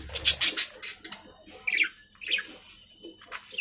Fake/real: real